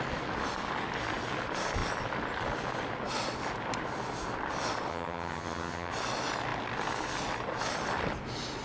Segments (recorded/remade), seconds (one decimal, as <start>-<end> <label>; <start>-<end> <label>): 0.0-4.9 recorded; 4.9-5.9 remade; 5.9-8.6 recorded